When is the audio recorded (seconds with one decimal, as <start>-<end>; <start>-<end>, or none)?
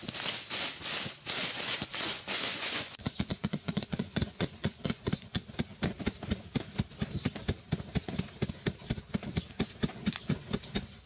0.0-1.4; 5.5-9.9; 10.4-11.1